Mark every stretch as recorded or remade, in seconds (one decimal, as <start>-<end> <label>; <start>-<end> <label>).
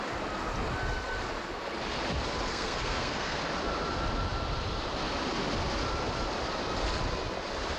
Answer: 0.0-2.5 recorded; 2.5-3.4 remade; 3.4-7.8 recorded